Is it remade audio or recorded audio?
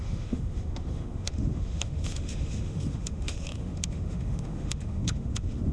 remade